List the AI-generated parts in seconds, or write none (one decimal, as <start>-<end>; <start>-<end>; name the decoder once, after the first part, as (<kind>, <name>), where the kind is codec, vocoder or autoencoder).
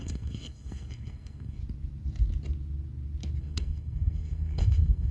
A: 0.0-1.6 (codec, SNAC); 3.4-5.1